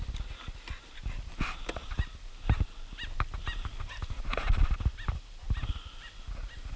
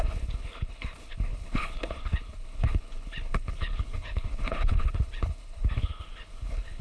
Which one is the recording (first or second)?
first